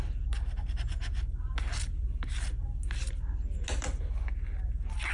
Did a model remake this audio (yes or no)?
no